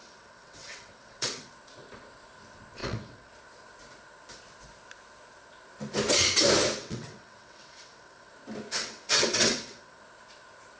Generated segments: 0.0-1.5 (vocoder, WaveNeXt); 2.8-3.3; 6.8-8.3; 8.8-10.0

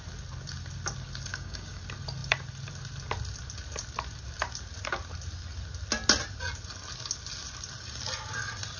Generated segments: 1.3-1.8 (codec, DAC)

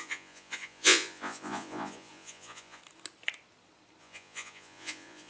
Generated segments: 0.0-2.8 (vocoder, Vocos); 4.0-5.3

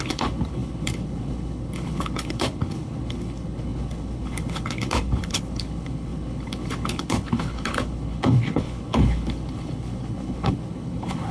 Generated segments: 0.0-11.3 (codec, HILCodec)

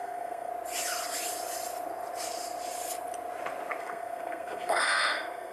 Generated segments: 0.0-0.5 (codec, SNAC); 3.8-5.5